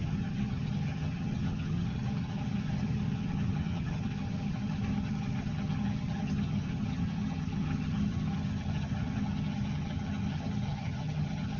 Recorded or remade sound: remade